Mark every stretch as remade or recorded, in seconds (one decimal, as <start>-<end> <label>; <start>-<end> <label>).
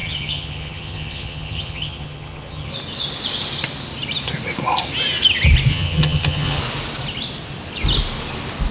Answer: 0.0-2.7 remade; 2.7-5.7 recorded; 5.7-6.6 remade; 6.6-8.7 recorded